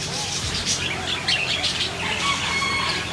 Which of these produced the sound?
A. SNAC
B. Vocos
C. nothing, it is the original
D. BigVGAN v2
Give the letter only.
C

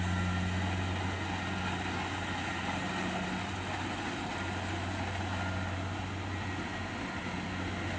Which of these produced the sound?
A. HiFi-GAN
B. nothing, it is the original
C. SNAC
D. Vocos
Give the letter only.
B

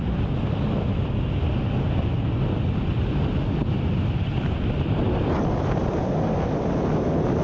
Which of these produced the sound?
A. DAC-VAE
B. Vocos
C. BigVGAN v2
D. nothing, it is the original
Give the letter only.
D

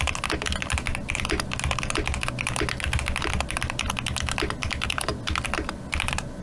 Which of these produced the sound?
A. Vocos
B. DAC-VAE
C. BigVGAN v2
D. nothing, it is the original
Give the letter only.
D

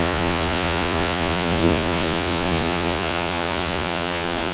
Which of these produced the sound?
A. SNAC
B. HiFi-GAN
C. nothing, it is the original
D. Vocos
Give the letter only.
D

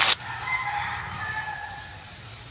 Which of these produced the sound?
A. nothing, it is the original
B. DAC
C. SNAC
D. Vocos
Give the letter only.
A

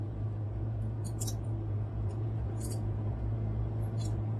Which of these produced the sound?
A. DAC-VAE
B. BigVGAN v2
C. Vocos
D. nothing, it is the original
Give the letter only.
C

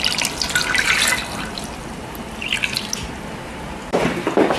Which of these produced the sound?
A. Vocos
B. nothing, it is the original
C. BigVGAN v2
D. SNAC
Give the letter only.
B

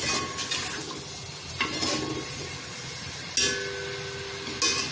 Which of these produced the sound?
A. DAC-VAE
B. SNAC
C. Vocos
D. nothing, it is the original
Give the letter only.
D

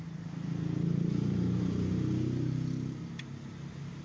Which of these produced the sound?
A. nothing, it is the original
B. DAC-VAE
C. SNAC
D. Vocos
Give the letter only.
A